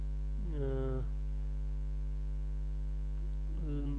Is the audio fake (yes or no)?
no